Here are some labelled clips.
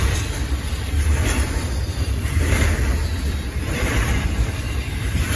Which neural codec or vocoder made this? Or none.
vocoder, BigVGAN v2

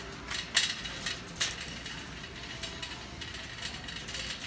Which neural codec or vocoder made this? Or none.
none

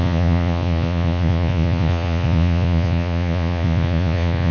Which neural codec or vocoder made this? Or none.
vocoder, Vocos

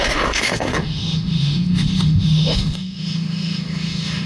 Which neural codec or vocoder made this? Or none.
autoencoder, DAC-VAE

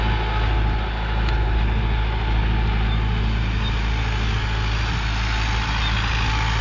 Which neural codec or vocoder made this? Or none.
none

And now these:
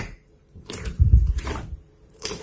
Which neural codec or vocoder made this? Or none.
vocoder, BigVGAN v2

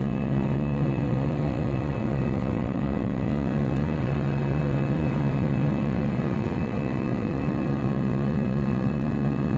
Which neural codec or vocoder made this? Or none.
vocoder, WaveNeXt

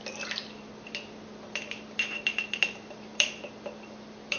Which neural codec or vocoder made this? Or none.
vocoder, BigVGAN v2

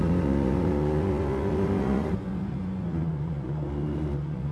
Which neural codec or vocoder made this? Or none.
vocoder, Vocos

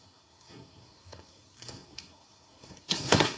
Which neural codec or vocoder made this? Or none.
codec, SNAC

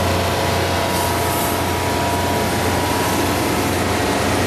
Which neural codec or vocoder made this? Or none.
none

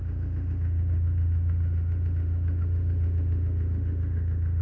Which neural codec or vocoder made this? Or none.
autoencoder, DAC-VAE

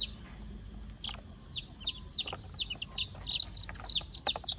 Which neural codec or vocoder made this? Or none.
none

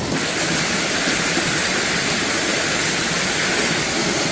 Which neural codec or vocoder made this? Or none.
none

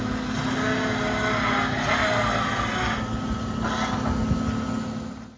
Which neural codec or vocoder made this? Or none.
none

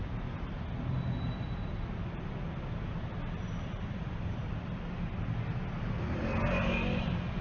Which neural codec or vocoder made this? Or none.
none